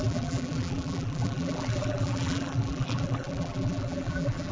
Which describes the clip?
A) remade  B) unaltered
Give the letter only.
A